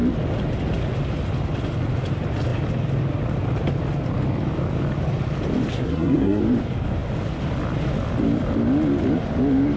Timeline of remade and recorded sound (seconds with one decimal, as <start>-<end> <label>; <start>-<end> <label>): 0.0-5.7 recorded; 5.7-6.4 remade; 6.4-9.8 recorded